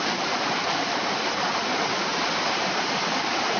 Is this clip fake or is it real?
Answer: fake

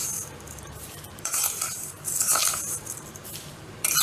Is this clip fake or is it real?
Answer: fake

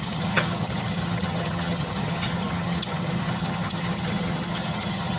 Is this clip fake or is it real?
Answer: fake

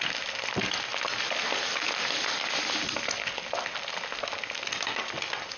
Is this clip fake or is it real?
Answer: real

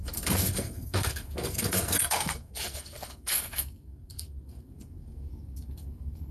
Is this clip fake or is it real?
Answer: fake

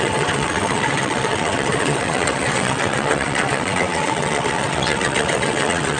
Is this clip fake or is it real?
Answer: fake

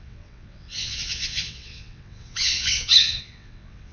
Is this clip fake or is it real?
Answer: fake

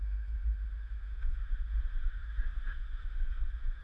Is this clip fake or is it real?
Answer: fake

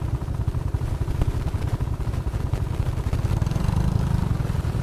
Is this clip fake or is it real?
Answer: real